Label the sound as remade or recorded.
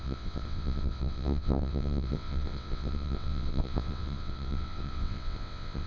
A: remade